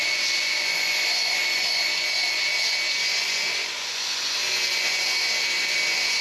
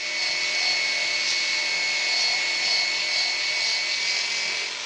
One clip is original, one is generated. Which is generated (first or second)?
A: first